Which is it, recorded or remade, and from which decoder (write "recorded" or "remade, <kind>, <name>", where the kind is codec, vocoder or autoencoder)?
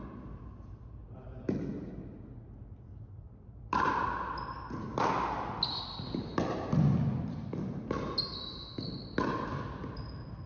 recorded